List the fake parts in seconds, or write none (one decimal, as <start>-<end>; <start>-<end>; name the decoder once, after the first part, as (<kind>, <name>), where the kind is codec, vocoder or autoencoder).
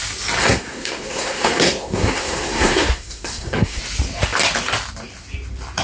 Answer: 0.4-3.8 (codec, SNAC)